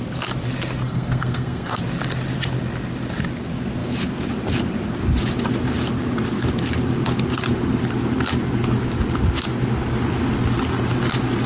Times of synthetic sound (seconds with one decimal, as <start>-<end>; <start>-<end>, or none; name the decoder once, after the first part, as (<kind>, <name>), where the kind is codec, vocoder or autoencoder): 0.8-1.8 (codec, SNAC)

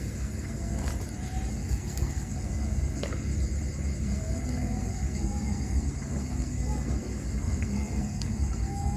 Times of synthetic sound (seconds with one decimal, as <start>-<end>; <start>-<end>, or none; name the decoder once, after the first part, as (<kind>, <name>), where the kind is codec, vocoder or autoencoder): 0.0-0.9 (codec, SNAC); 1.5-3.3; 4.0-9.0

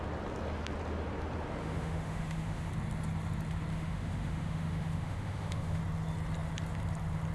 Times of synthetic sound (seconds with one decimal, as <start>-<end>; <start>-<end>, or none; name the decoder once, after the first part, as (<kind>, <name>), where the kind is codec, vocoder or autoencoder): 1.6-2.7 (autoencoder, DAC-VAE); 3.7-5.8

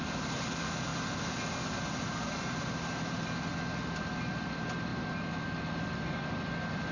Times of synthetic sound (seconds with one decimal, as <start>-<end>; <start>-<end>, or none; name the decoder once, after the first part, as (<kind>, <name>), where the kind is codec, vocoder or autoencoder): 0.0-0.9 (vocoder, BigVGAN v2); 4.3-4.9; 5.7-6.9